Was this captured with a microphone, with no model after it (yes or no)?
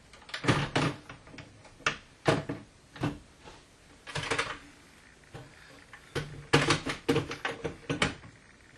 yes